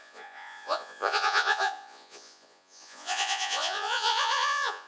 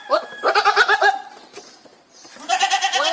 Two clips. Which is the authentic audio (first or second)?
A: second